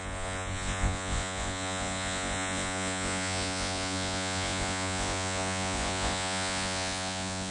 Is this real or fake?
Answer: fake